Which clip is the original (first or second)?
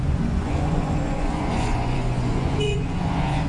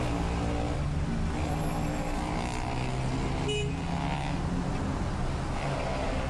second